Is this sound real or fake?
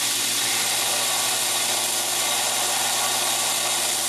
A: real